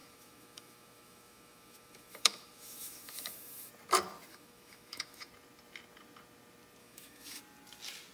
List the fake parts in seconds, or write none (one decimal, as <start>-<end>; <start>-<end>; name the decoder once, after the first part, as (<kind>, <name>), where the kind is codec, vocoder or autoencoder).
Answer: 0.0-3.7 (autoencoder, DAC-VAE); 4.3-5.3; 6.8-7.4

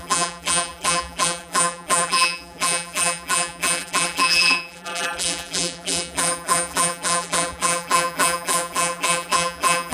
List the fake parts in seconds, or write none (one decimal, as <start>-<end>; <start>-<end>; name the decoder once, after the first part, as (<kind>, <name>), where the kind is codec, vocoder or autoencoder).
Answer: 0.0-9.9 (vocoder, BigVGAN v2)

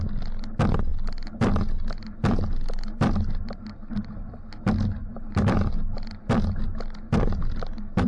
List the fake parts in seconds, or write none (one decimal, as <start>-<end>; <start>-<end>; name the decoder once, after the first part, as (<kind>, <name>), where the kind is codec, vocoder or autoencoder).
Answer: none

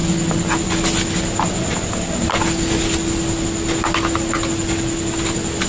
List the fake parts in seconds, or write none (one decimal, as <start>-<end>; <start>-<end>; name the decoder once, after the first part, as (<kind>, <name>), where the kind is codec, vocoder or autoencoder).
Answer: none

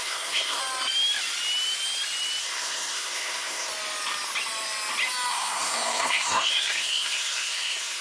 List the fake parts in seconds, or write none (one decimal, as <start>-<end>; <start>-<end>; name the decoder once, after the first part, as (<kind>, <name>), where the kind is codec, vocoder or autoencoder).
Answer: 0.0-0.6 (codec, SNAC); 2.4-3.7; 5.3-8.0